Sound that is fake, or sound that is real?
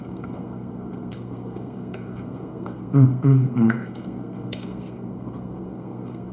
fake